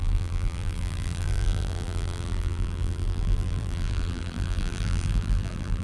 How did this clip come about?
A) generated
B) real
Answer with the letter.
A